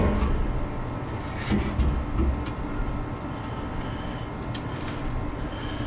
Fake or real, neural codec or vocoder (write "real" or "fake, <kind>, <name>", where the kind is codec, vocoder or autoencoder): real